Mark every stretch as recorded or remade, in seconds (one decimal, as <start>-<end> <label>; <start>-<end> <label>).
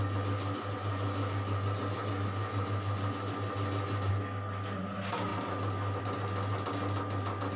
0.0-7.6 recorded